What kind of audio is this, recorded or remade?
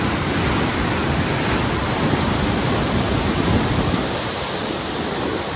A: recorded